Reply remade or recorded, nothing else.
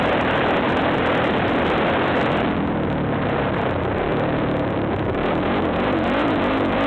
remade